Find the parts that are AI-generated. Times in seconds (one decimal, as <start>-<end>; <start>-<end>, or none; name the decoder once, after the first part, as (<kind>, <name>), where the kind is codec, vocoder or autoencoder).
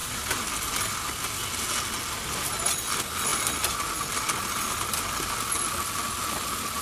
0.0-0.7 (vocoder, BigVGAN v2)